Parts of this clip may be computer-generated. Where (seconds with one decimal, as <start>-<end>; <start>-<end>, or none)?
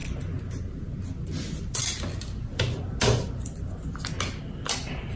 none